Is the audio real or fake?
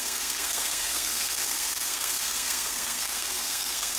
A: fake